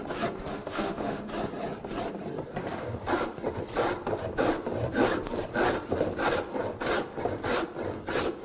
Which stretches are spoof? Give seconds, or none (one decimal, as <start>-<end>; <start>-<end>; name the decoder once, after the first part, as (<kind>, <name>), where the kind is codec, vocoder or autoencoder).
0.5-1.3 (autoencoder, DAC-VAE)

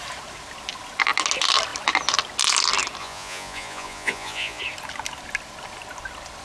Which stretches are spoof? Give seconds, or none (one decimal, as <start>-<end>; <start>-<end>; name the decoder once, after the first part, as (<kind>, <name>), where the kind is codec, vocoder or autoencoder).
3.0-4.6 (vocoder, Vocos)